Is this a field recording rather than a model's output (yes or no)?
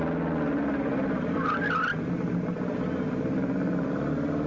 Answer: yes